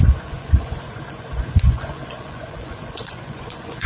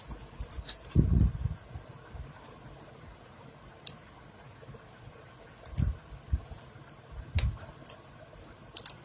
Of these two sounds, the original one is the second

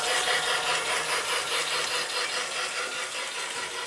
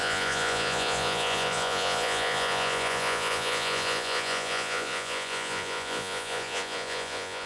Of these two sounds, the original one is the first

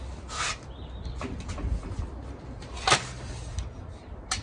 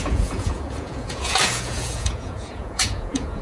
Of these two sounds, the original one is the first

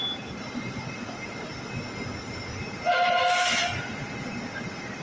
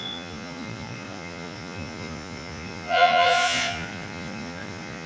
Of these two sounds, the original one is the first